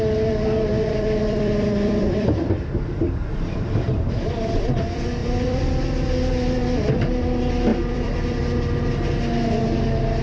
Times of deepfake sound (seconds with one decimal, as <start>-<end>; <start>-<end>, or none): 0.7-4.8; 5.2-5.8; 7.7-8.4